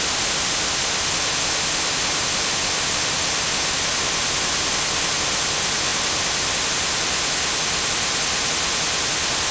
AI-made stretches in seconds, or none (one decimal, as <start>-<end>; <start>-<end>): none